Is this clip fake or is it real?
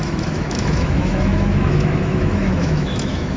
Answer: fake